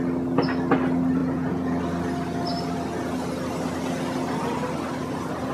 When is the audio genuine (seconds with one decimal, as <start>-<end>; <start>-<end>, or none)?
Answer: 0.0-1.2; 1.8-5.5